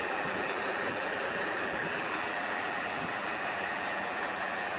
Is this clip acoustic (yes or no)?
no